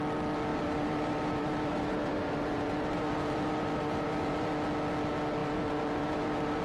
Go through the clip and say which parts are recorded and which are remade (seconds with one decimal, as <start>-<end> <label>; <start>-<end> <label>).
0.0-0.5 recorded; 0.5-4.5 remade; 4.5-5.4 recorded; 5.4-6.6 remade